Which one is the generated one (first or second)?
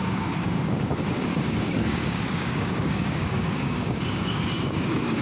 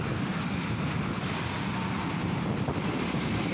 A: first